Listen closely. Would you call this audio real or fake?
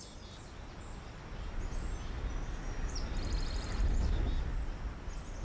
real